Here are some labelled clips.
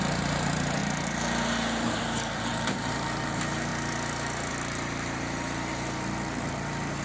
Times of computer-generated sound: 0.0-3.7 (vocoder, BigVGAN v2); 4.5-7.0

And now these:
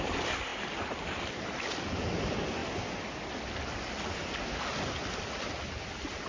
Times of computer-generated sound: none

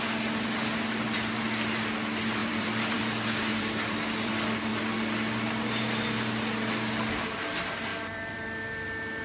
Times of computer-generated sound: 2.4-3.0 (vocoder, BigVGAN v2); 3.5-4.3; 7.9-8.4

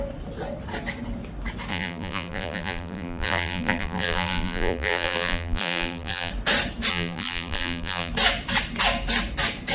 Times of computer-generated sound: 1.7-6.3 (vocoder, BigVGAN v2); 6.9-8.1

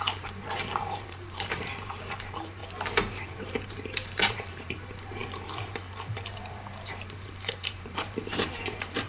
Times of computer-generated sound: 0.0-2.6 (vocoder, BigVGAN v2); 3.2-9.1

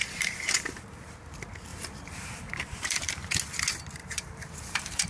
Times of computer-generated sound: 0.0-0.8 (vocoder, BigVGAN v2); 1.7-3.4; 4.0-5.1